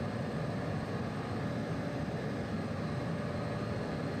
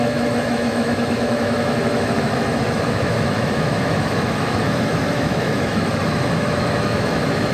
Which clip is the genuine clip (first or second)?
first